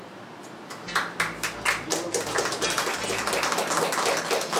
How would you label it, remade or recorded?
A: recorded